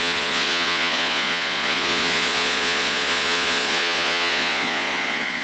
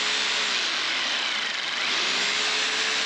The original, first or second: second